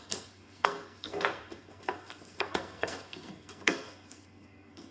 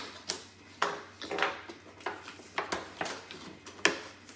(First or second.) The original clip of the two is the second